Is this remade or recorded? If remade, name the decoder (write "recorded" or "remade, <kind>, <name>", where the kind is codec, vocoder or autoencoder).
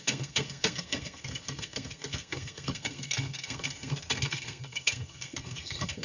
remade, codec, SNAC